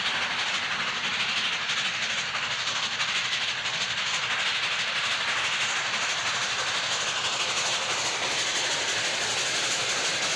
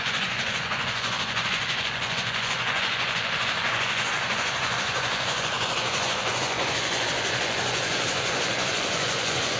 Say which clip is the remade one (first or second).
second